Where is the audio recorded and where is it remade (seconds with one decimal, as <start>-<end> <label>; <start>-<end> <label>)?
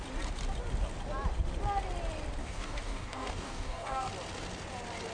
0.0-2.4 recorded; 2.4-4.1 remade; 4.1-5.1 recorded